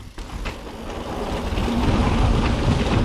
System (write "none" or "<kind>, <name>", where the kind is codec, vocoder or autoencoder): none